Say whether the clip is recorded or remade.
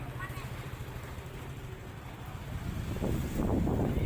remade